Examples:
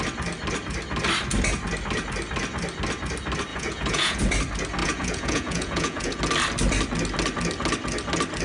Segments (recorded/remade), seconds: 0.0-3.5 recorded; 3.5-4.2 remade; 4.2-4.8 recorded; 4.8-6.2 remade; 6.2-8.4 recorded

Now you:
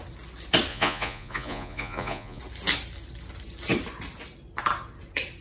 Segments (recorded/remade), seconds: 0.0-0.7 recorded; 0.7-2.4 remade; 2.4-5.4 recorded

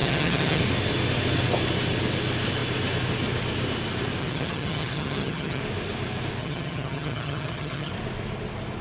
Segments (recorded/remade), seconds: 0.0-0.6 remade; 0.6-4.2 recorded; 4.2-5.6 remade; 5.6-6.4 recorded; 6.4-7.9 remade; 7.9-8.8 recorded

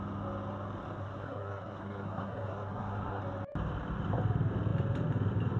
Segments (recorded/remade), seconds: 0.0-1.0 recorded; 1.0-3.2 remade; 3.2-5.6 recorded

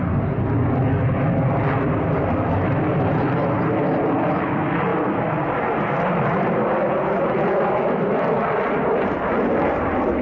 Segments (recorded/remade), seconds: 0.0-10.2 recorded